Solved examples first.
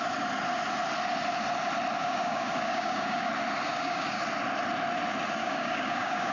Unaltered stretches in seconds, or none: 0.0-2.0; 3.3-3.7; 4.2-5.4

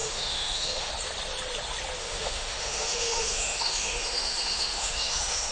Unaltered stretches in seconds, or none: 0.9-2.0

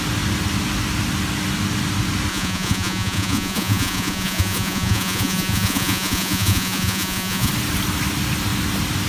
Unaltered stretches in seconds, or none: 0.0-2.3; 7.5-9.1

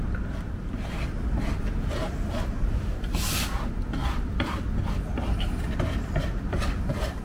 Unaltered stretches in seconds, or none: 0.0-4.0

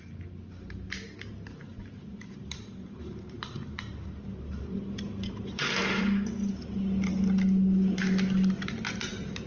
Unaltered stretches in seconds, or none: 0.0-1.7; 6.5-9.5